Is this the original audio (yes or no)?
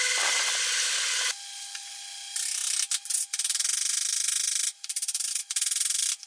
yes